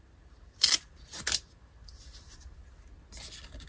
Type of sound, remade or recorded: recorded